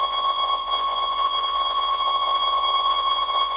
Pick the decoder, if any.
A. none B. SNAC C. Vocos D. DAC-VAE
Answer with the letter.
C